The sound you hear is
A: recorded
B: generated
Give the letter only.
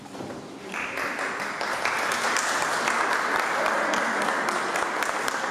A